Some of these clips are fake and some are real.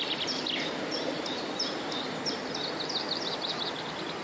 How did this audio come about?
real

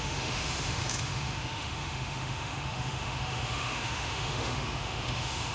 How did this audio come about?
fake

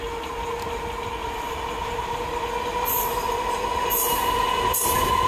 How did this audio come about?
real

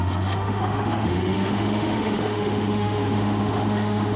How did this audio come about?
fake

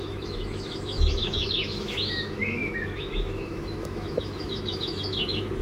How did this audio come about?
fake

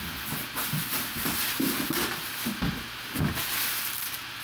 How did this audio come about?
real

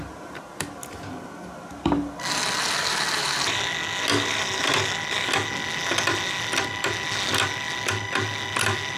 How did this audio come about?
real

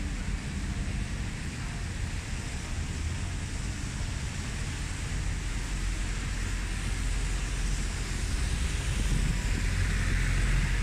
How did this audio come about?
real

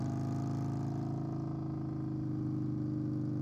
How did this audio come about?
real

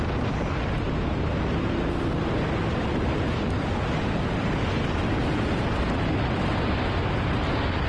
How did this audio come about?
real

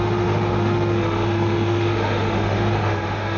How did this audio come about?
fake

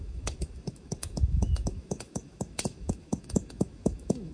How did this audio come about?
fake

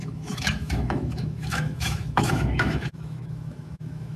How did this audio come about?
fake